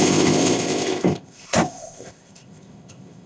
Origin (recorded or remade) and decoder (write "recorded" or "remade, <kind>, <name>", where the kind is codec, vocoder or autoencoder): remade, codec, ZipCodec